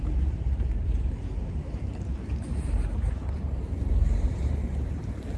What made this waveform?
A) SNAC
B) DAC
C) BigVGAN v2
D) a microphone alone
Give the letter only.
C